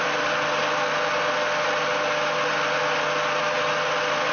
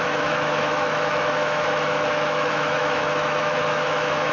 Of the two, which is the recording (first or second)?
first